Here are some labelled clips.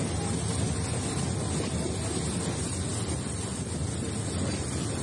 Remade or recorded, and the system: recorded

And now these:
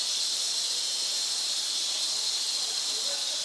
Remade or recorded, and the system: recorded